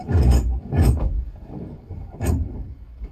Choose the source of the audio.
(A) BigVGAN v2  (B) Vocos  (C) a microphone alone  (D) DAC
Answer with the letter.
D